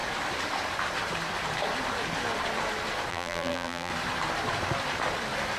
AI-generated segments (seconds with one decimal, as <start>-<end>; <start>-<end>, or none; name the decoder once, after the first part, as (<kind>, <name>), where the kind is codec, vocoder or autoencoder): 3.1-3.9 (vocoder, BigVGAN v2)